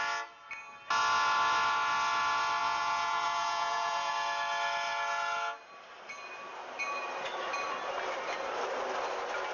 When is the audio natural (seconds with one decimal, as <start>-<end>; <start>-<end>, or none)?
0.0-2.6; 4.1-9.5